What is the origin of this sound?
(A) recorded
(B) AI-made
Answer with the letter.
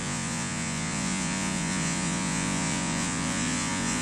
B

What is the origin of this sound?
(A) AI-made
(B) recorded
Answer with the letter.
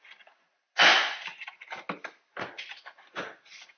B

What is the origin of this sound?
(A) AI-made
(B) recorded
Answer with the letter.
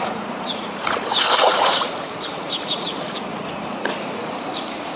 A